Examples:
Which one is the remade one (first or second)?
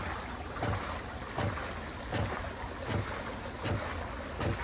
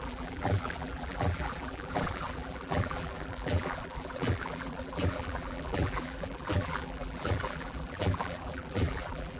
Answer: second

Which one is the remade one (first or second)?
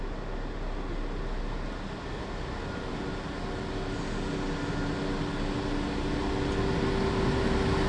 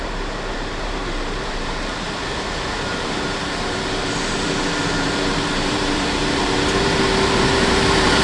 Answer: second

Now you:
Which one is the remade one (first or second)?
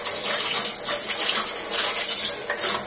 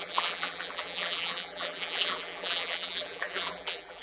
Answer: second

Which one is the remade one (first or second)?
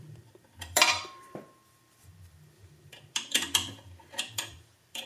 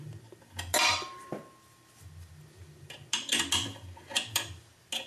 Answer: first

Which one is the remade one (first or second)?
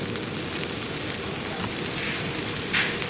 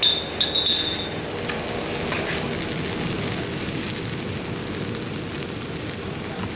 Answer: first